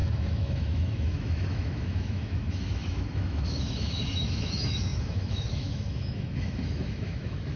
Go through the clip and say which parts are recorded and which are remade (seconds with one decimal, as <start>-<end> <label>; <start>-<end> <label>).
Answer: 0.0-7.6 remade